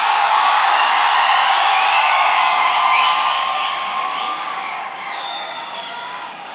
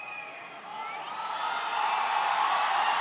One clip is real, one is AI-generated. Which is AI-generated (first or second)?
first